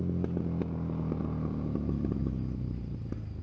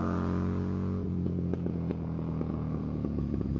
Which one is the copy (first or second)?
second